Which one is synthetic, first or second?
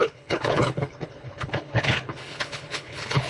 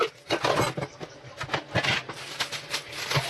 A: first